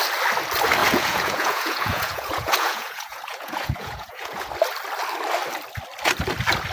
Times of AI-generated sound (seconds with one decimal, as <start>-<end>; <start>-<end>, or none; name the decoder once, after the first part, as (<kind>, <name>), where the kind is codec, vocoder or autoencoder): 0.8-4.5 (vocoder, Vocos)